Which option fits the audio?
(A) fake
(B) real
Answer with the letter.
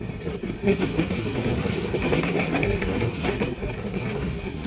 A